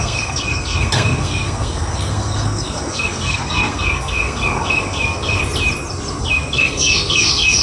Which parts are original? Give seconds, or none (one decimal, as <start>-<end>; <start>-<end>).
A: 5.4-6.2